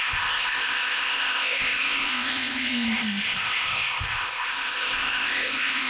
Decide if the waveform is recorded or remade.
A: remade